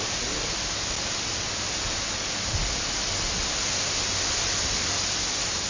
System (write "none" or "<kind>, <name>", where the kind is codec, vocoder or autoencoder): none